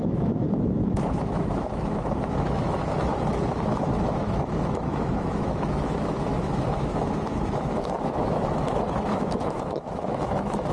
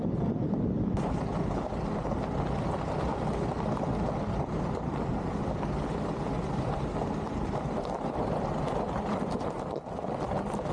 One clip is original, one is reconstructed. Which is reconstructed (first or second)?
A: first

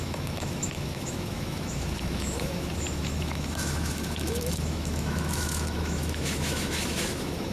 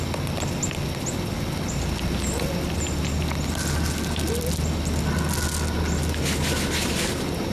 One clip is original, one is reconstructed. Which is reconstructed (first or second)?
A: first